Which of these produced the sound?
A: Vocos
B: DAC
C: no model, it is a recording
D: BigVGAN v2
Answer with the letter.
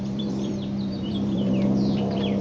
D